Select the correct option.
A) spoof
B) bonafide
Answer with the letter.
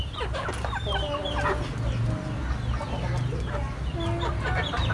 B